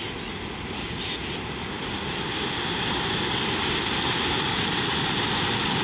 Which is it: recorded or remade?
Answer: remade